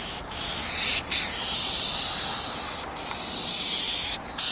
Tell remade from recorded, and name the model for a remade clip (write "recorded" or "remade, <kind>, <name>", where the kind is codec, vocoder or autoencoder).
recorded